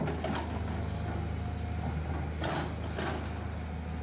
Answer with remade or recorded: recorded